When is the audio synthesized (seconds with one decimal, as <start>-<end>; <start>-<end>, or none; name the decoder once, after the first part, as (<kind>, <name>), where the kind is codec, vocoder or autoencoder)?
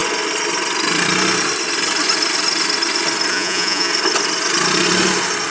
3.3-3.9 (vocoder, Vocos)